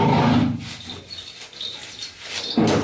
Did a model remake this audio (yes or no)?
no